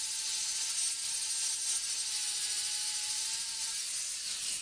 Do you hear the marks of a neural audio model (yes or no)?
no